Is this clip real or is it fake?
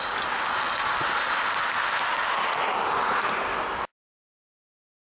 real